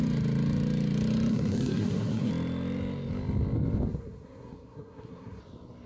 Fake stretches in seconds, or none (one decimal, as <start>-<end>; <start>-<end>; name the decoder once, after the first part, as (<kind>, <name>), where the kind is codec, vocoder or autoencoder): 1.3-2.3 (codec, SNAC); 3.9-5.4